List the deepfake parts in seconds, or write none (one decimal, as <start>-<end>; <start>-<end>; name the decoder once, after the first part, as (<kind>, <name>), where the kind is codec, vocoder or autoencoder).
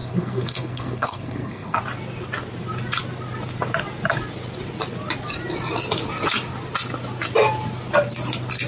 0.0-1.8 (codec, SNAC)